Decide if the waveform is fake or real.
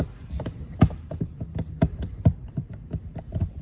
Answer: fake